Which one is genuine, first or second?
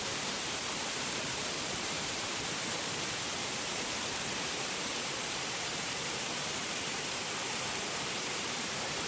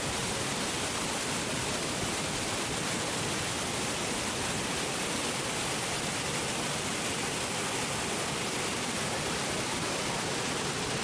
second